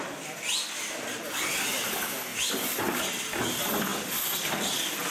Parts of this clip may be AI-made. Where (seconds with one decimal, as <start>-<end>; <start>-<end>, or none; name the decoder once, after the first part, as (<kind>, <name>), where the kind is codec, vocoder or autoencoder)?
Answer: 3.9-5.1 (vocoder, BigVGAN v2)